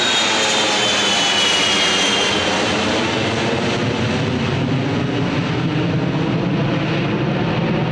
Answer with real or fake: real